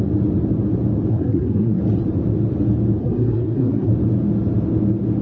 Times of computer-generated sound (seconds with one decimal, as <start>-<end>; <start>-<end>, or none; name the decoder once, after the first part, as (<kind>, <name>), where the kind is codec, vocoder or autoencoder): 1.1-1.8 (codec, SNAC); 3.0-3.9